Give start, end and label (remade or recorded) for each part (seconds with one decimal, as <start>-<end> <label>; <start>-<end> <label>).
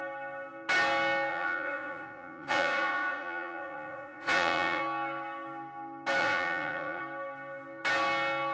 0.0-1.3 recorded; 1.3-4.8 remade; 4.8-6.2 recorded; 6.2-7.0 remade; 7.0-8.5 recorded